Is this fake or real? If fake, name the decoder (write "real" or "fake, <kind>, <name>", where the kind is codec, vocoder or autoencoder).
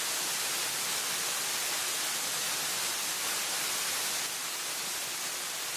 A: real